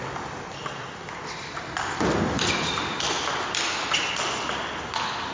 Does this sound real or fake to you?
real